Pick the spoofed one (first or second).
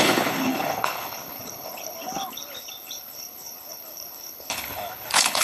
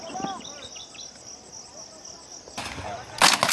first